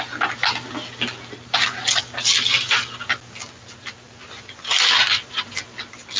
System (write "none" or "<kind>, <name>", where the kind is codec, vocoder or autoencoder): none